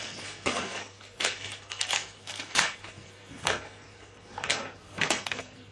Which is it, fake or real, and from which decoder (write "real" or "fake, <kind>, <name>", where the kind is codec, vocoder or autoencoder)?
fake, codec, SNAC